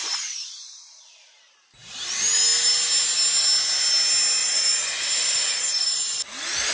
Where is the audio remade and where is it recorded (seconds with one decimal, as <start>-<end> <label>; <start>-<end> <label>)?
0.0-1.5 remade; 1.5-4.4 recorded; 4.4-6.2 remade; 6.2-6.7 recorded